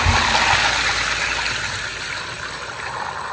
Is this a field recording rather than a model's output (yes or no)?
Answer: yes